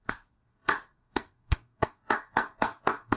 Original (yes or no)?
no